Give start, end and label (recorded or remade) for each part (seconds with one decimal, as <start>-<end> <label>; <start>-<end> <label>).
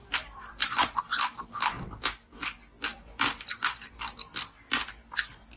0.0-1.0 remade; 1.0-2.9 recorded; 2.9-4.8 remade; 4.8-5.6 recorded